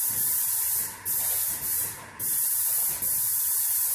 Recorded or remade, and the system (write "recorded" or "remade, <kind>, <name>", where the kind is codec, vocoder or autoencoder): recorded